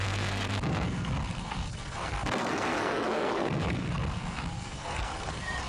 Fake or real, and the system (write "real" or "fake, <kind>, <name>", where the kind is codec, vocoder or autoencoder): fake, codec, SNAC